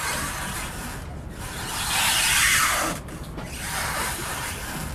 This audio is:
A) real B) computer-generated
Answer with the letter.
A